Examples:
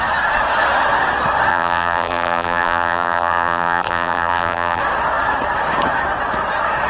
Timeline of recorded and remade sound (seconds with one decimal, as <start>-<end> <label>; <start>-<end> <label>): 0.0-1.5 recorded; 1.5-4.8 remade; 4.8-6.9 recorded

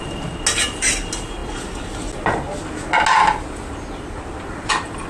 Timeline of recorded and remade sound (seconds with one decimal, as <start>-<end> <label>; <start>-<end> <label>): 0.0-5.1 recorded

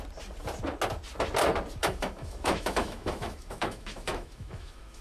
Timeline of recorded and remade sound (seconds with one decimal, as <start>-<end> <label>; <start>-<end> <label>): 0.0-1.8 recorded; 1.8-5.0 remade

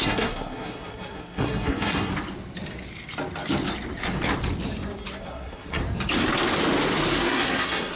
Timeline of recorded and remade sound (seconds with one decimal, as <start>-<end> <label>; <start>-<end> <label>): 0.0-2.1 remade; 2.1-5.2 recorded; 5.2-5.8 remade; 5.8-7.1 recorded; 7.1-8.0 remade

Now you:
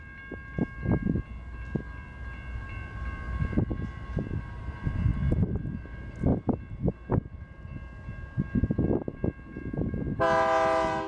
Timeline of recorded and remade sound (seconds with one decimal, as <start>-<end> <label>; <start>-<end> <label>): 0.0-11.1 recorded

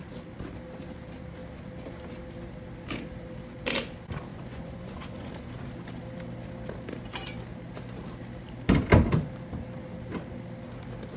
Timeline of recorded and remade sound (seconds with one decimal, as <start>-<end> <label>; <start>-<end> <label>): 0.0-4.3 recorded; 4.3-5.3 remade; 5.3-11.2 recorded

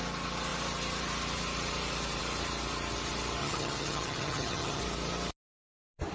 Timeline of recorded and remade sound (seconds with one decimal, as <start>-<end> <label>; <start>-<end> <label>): 0.0-3.4 recorded; 3.4-4.8 remade; 4.8-6.1 recorded

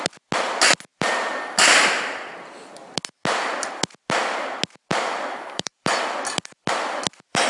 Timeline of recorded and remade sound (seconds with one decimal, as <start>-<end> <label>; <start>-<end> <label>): 0.0-0.9 recorded; 0.9-2.0 remade; 2.0-4.9 recorded; 4.9-6.0 remade; 6.0-7.5 recorded